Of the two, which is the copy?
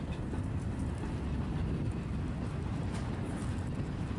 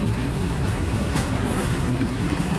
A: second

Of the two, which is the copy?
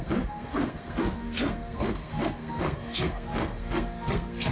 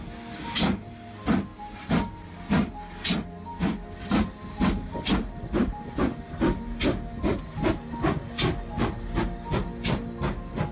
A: first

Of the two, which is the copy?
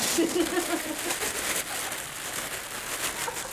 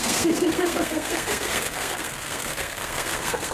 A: second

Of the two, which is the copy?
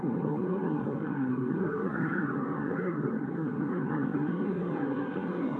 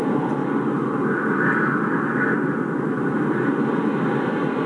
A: first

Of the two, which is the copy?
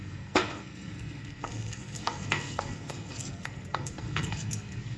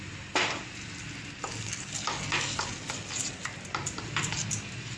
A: first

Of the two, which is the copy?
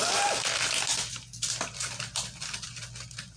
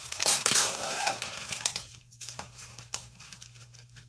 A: second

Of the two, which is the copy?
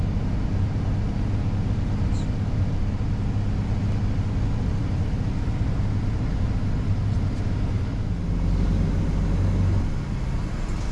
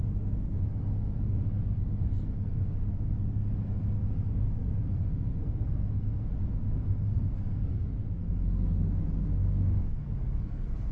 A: second